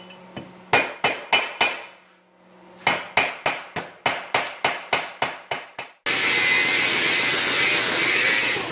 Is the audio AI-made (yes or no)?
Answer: no